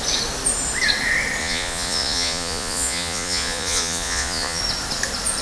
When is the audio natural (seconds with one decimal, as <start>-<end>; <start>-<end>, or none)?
0.0-1.4; 4.6-5.4